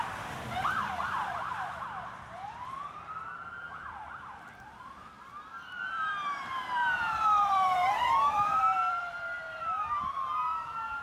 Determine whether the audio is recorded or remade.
remade